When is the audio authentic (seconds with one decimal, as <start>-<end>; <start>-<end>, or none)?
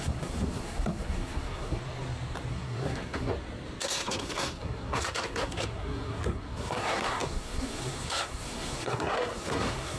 1.8-2.5; 3.3-3.8